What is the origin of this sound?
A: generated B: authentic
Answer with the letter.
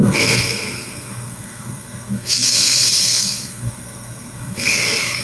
A